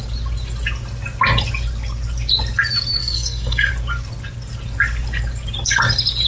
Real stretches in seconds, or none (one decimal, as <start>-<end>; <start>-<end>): 0.0-3.0; 3.7-6.3